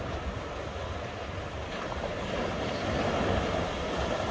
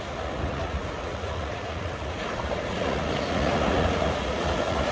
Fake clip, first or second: second